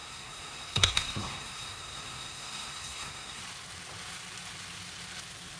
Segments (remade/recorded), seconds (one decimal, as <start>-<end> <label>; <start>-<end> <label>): 0.0-3.4 remade; 3.4-5.6 recorded